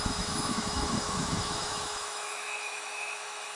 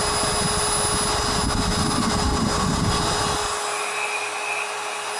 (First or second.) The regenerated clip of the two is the first